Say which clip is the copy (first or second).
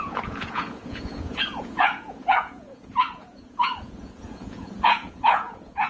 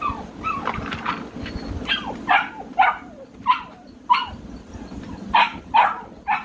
first